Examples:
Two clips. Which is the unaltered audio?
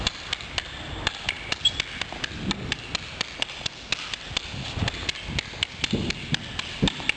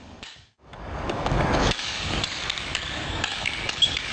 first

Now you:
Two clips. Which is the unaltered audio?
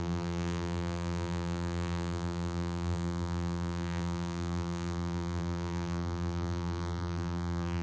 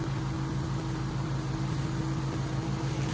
second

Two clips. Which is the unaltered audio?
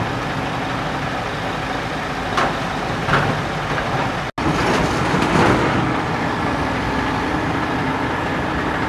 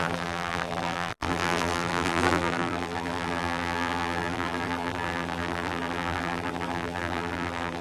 first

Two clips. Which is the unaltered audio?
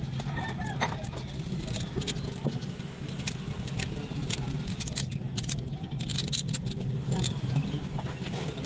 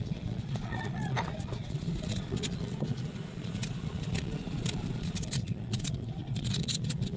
first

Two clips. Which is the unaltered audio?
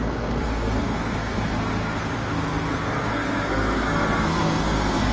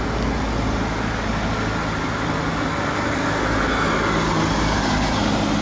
second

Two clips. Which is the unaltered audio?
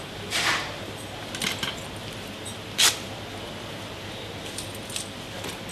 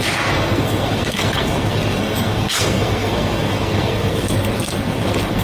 first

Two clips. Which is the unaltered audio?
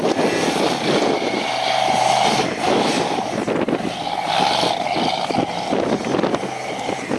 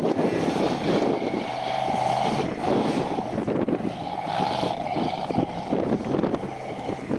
first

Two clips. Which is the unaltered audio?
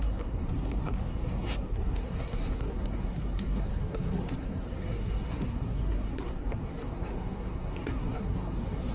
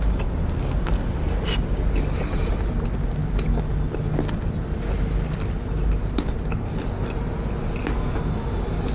second